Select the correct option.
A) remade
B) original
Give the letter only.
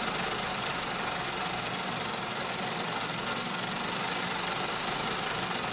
B